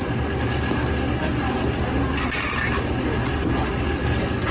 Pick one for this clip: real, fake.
real